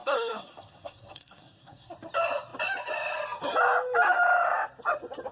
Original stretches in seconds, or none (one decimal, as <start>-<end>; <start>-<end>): 1.9-5.3